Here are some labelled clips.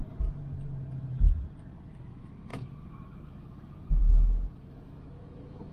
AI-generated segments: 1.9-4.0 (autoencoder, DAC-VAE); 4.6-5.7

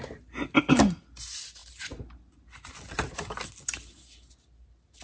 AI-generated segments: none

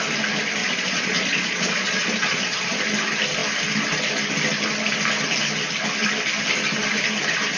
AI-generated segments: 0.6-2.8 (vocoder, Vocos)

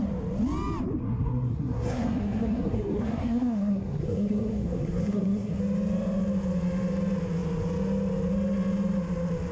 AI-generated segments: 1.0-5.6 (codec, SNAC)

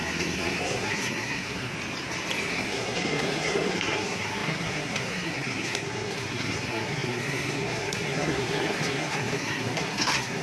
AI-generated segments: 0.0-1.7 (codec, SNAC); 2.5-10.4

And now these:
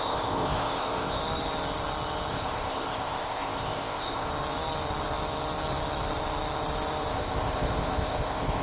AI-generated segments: 0.0-1.2 (codec, ZipCodec); 2.3-4.3; 7.1-8.6